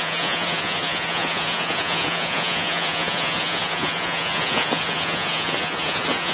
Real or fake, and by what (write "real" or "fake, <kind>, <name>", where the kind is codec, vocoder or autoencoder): fake, vocoder, Vocos